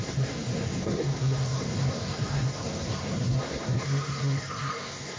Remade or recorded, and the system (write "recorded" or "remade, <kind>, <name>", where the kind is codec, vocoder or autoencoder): remade, codec, SNAC